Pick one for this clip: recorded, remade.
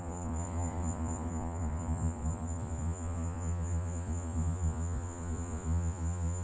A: remade